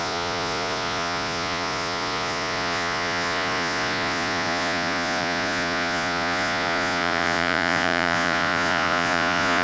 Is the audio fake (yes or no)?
yes